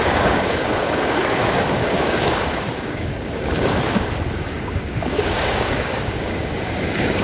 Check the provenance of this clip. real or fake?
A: fake